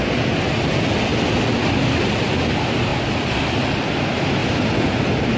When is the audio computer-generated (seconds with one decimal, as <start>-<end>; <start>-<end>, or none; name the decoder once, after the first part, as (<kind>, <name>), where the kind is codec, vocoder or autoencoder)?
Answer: none